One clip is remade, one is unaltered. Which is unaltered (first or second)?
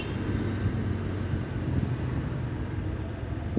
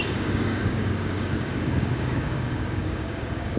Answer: first